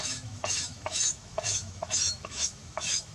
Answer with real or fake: fake